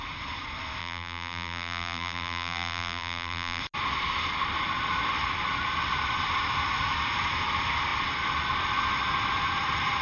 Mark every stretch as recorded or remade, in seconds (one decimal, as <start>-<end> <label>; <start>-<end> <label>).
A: 0.0-0.8 recorded; 0.8-3.6 remade; 3.6-10.0 recorded